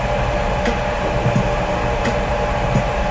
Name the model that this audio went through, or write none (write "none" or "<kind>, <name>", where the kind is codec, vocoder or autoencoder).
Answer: none